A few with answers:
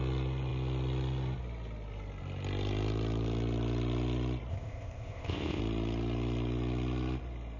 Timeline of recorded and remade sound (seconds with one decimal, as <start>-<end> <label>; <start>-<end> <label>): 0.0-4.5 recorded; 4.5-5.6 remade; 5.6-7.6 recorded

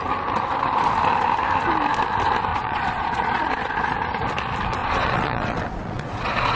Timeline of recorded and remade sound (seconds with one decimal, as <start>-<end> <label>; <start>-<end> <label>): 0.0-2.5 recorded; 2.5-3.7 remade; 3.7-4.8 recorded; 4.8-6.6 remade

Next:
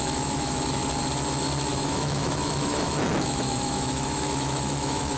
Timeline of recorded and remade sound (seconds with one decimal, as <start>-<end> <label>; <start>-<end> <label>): 0.0-0.8 remade; 0.8-1.7 recorded; 1.7-5.2 remade